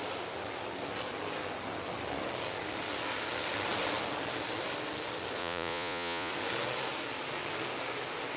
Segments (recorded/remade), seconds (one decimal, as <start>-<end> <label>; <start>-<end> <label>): 0.0-5.4 recorded; 5.4-6.3 remade; 6.3-8.4 recorded